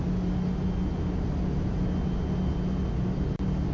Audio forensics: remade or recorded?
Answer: recorded